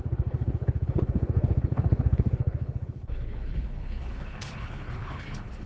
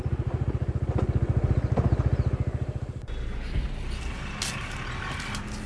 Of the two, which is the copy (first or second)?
first